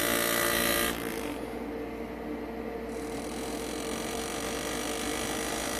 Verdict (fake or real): real